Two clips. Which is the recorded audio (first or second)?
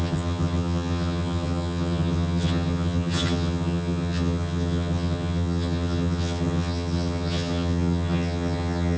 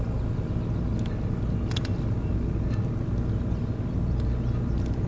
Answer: second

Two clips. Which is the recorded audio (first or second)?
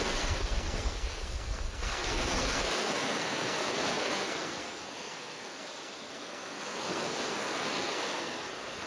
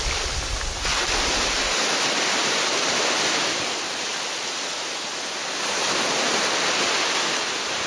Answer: second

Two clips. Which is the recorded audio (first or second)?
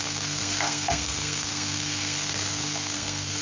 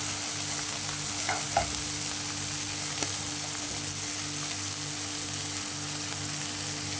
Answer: second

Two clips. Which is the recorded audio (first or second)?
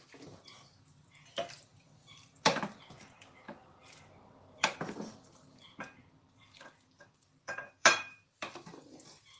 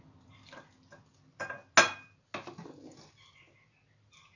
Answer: second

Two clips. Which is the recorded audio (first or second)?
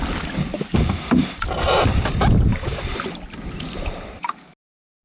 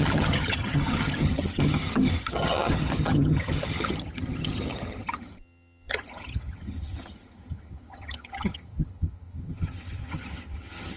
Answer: first